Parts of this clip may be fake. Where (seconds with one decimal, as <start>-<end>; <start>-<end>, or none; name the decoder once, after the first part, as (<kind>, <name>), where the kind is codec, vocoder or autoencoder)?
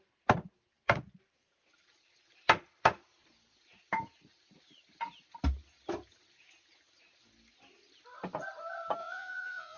9.0-9.8 (vocoder, Vocos)